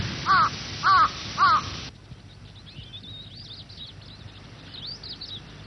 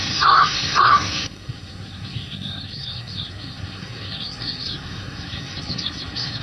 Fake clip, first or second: second